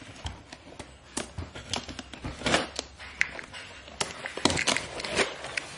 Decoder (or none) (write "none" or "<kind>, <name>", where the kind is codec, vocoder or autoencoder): none